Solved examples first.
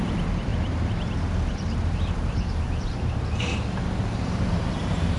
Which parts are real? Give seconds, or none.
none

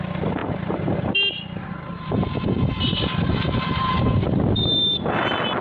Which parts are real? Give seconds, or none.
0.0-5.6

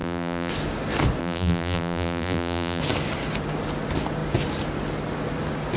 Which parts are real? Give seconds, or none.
0.5-1.2; 2.8-5.8

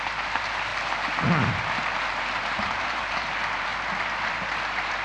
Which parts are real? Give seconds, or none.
0.7-2.1; 3.7-4.3